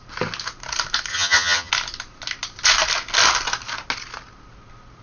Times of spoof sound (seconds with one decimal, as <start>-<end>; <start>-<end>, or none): 1.1-1.7